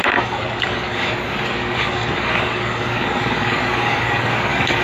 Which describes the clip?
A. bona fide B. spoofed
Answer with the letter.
B